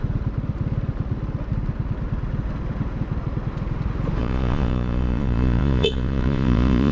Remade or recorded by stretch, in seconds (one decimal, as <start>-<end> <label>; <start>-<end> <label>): 0.0-4.2 recorded; 4.2-6.9 remade